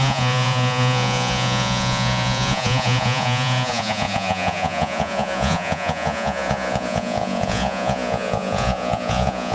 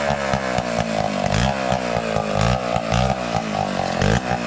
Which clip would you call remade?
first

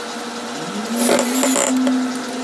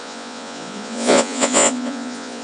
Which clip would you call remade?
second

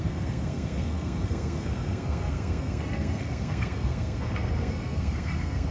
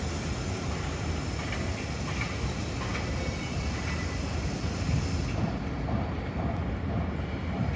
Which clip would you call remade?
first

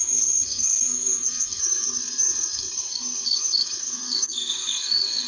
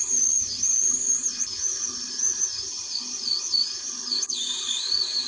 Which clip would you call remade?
first